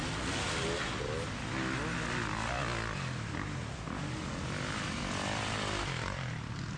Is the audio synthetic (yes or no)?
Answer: no